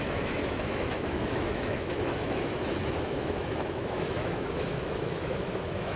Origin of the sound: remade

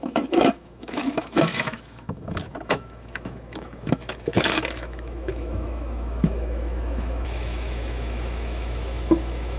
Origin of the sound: remade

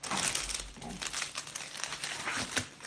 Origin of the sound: recorded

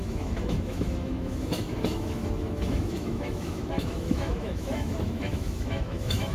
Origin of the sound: remade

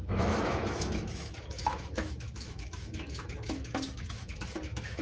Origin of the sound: remade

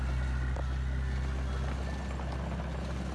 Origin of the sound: recorded